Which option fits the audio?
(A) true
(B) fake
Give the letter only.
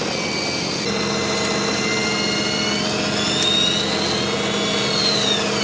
A